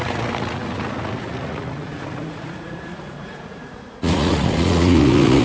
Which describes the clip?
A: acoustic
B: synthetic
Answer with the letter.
B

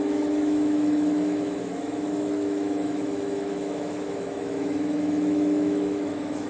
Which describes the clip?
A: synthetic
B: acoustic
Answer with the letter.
A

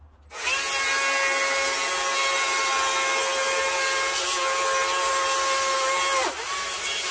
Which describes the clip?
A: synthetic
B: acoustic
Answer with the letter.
B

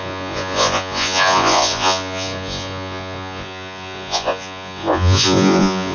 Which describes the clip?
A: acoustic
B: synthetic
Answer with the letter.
B